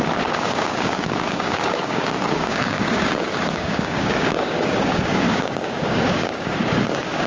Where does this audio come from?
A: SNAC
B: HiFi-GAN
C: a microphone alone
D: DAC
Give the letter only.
D